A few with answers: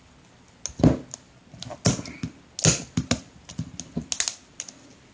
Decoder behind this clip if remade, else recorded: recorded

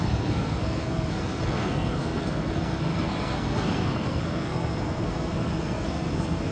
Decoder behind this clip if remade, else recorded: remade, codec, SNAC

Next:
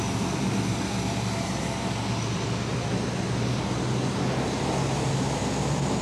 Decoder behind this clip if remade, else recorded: recorded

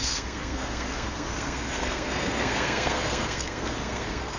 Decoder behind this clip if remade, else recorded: remade, codec, SNAC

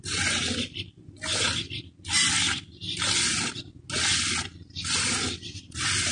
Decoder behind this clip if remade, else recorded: recorded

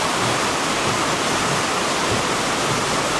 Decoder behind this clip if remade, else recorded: recorded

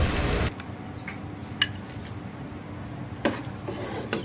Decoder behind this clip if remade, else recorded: recorded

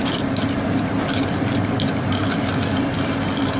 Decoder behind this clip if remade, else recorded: recorded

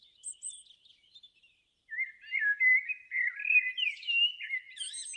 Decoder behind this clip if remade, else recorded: recorded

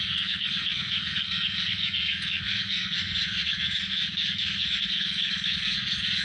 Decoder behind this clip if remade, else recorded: remade, codec, SNAC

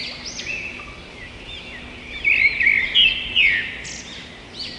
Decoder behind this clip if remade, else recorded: recorded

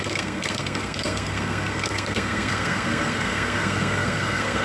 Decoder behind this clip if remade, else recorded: remade, codec, SNAC